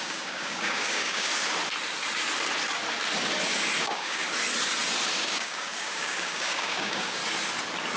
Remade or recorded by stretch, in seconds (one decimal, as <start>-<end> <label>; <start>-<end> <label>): 0.0-1.3 remade; 1.3-3.8 recorded; 3.8-4.2 remade; 4.2-5.2 recorded; 5.2-7.2 remade; 7.2-8.0 recorded